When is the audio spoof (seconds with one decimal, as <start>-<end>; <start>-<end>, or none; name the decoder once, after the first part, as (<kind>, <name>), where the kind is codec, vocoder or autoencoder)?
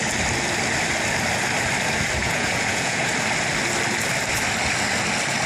2.2-3.1 (vocoder, Vocos)